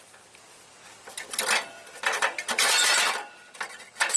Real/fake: real